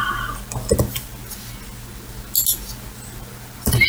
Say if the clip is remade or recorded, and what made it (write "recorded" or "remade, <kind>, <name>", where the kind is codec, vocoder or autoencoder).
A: recorded